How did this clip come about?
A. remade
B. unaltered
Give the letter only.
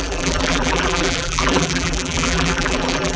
A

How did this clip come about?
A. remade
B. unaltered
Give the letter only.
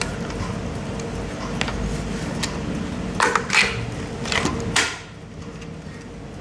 B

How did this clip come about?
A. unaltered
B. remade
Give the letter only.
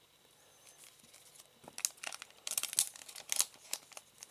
A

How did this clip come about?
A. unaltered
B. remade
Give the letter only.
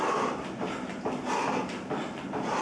A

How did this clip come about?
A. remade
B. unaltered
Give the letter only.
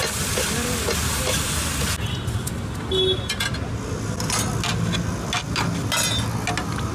B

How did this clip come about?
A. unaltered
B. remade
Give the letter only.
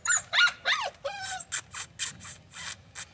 A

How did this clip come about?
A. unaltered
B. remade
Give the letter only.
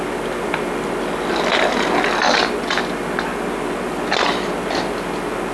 A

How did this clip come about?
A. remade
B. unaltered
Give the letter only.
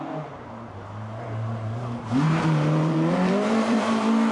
A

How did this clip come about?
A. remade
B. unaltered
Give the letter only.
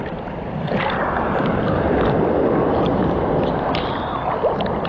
A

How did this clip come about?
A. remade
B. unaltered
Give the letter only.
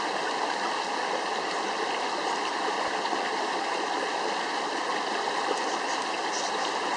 B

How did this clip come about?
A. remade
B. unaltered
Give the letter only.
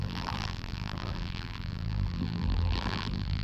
A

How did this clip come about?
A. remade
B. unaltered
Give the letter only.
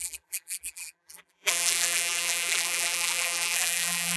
A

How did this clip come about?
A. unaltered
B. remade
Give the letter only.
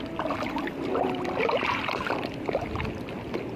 A